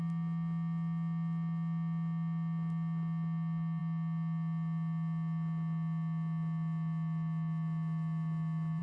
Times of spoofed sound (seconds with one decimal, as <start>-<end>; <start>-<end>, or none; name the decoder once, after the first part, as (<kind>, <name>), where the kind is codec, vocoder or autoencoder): none